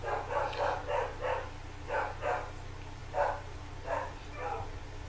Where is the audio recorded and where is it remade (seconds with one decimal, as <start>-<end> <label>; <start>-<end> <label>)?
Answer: 0.0-5.1 recorded